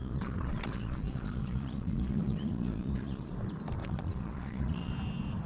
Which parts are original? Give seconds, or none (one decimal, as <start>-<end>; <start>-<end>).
3.3-3.8; 4.9-5.5